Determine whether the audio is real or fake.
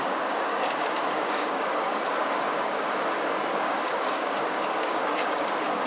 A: fake